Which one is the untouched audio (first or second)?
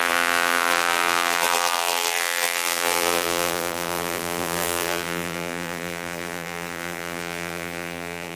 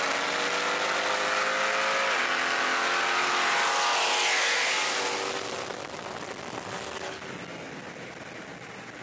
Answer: second